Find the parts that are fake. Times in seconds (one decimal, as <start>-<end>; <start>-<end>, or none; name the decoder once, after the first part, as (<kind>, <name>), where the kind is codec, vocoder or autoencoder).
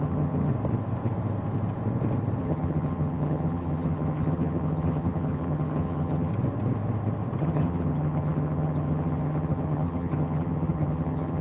0.0-0.5 (vocoder, HiFi-GAN); 2.4-6.3; 7.4-11.4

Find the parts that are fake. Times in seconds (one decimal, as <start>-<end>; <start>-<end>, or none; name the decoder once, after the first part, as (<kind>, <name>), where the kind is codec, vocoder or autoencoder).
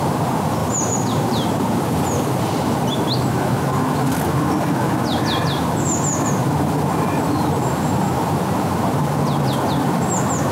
0.6-1.7 (vocoder, BigVGAN v2)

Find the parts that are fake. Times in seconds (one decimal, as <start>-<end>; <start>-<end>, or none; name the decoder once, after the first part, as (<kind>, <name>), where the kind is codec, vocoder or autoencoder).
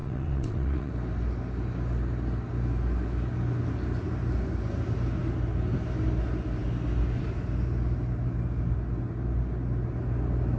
0.0-0.9 (vocoder, WaveNeXt)